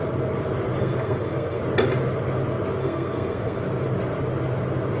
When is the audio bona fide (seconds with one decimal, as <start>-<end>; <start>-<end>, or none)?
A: 0.0-0.8; 1.6-2.8; 3.6-5.0